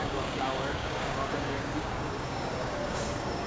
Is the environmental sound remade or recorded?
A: remade